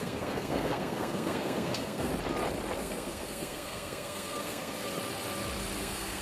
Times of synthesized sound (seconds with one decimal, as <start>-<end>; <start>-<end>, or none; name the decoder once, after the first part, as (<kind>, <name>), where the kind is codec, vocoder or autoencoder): 0.0-2.1 (codec, SNAC); 2.8-4.9; 5.8-6.2